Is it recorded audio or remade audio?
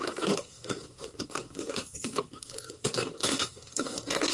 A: remade